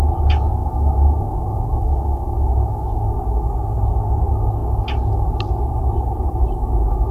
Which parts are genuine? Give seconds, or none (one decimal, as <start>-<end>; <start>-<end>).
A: 0.0-0.6; 3.0-7.1

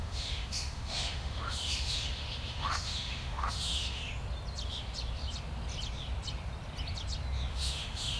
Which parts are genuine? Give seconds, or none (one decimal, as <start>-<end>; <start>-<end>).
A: 4.0-7.5

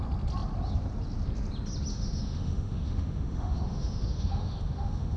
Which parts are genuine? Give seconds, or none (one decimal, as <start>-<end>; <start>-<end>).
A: 0.0-1.9

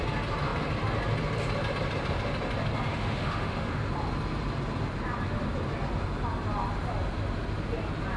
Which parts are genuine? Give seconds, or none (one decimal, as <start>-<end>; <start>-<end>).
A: 0.0-2.9; 3.8-8.2

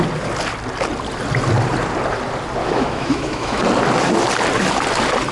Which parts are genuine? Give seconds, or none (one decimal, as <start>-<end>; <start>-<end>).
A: 0.0-2.6; 3.6-5.3